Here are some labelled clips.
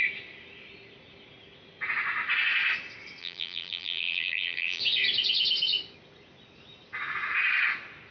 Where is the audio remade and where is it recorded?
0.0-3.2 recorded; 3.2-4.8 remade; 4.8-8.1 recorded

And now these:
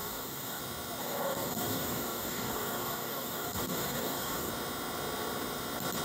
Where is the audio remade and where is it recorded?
0.0-0.6 remade; 0.6-1.0 recorded; 1.0-4.5 remade; 4.5-6.0 recorded

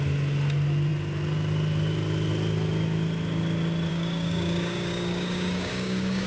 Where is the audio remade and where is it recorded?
0.0-3.9 recorded; 3.9-6.3 remade